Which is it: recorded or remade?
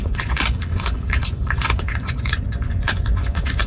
remade